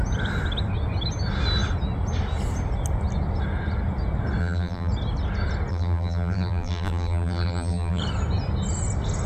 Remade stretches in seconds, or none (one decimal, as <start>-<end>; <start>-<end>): 4.4-4.9; 5.7-8.0